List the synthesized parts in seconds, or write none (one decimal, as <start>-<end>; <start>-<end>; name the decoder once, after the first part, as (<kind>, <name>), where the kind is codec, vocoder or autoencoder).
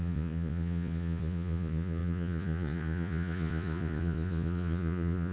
0.0-5.3 (vocoder, Vocos)